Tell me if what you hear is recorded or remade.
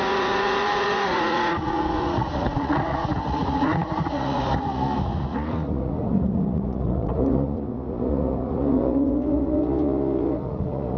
remade